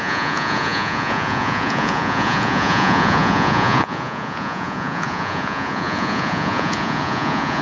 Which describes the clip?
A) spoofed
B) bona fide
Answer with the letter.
A